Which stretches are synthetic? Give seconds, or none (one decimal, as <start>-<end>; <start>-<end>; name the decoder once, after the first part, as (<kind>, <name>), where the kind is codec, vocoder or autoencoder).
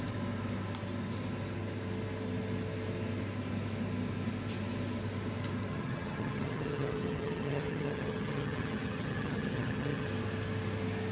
5.7-10.1 (vocoder, HiFi-GAN)